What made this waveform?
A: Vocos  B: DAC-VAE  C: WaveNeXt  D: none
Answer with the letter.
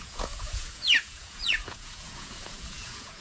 A